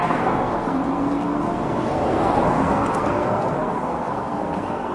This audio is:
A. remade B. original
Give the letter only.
A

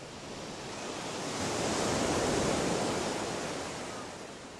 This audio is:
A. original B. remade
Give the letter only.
A